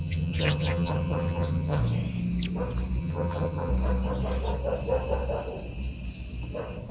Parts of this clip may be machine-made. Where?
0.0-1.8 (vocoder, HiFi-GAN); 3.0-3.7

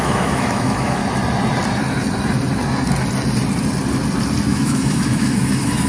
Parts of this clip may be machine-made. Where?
0.0-1.0 (autoencoder, DAC-VAE); 4.5-5.9

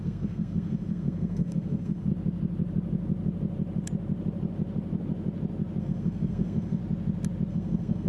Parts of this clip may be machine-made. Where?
0.0-2.1 (codec, SNAC); 5.8-6.8; 7.5-8.1

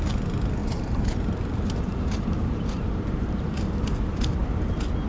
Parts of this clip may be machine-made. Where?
0.6-3.7 (vocoder, BigVGAN v2)

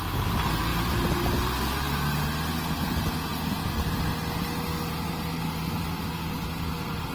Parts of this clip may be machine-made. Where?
none

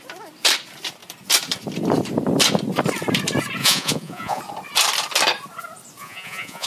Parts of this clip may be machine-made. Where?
3.6-4.4 (vocoder, Vocos); 6.0-6.7

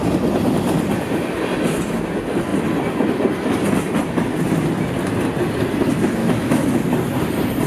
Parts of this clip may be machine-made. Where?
6.2-6.8 (autoencoder, DAC-VAE)